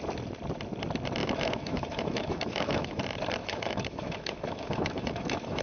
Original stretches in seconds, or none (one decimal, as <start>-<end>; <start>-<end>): 0.0-1.2; 3.0-3.4